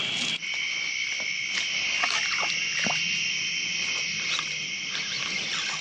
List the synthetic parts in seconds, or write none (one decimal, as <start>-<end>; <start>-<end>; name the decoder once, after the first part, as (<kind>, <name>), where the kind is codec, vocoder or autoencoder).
none